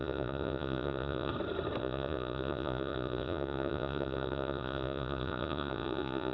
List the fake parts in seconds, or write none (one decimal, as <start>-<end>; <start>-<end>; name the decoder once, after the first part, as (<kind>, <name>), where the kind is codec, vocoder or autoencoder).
0.0-1.3 (vocoder, Vocos); 1.8-6.3